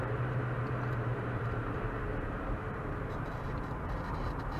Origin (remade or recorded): remade